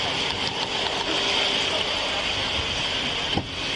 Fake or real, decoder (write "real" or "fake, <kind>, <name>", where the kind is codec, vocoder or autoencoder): real